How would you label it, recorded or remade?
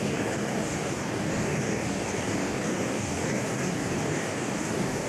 remade